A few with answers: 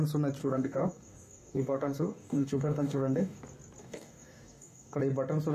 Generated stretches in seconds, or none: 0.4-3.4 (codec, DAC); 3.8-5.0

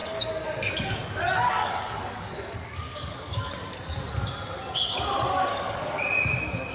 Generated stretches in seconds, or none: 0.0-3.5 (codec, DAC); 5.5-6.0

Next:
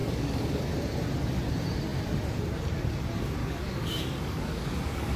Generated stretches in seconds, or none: 0.0-0.6 (codec, DAC); 3.4-5.2

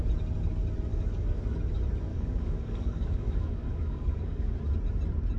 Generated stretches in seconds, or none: 0.9-1.4 (codec, DAC); 2.1-4.5